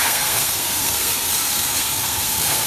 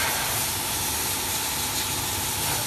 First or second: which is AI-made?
first